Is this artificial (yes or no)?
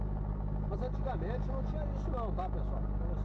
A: no